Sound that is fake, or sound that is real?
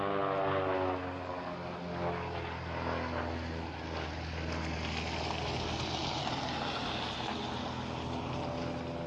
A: real